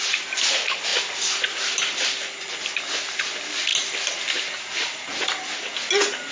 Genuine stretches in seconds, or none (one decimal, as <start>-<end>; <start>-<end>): 0.0-6.3